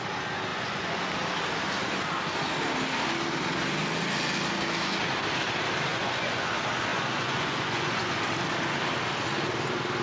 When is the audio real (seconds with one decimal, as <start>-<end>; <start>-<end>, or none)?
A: 0.0-0.5; 1.0-5.9; 6.5-6.9; 8.2-10.0